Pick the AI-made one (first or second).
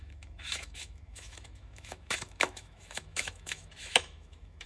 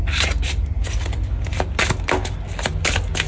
first